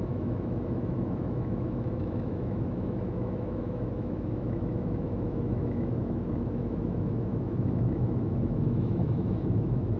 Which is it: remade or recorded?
remade